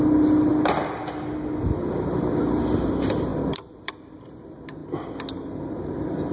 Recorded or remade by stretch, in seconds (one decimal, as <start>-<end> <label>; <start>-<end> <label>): 0.0-4.8 remade; 4.8-5.5 recorded; 5.5-6.3 remade